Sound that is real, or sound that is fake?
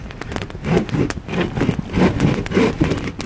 real